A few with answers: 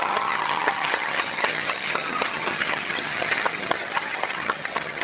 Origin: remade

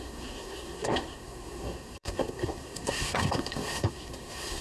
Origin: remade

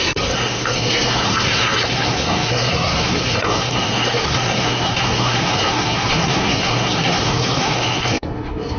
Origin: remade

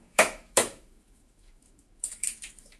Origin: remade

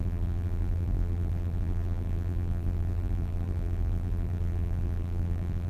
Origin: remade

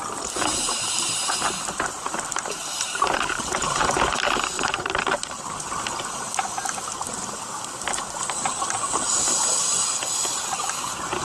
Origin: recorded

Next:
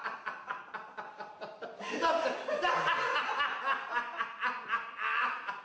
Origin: recorded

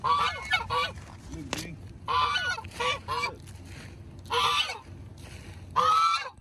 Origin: recorded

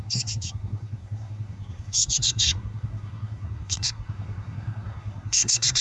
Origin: remade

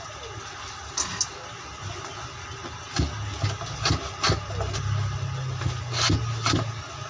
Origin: recorded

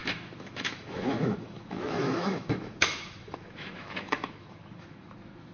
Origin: remade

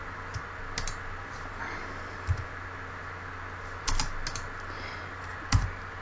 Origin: recorded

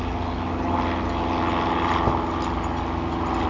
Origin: recorded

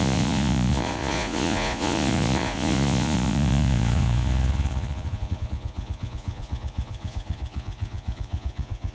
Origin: remade